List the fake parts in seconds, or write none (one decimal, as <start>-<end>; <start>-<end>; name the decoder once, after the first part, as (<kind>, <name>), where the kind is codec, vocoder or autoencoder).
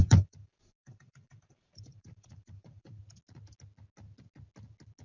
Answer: 0.0-3.0 (vocoder, BigVGAN v2)